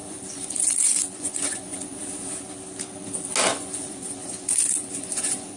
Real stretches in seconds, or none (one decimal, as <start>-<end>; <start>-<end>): 2.0-3.5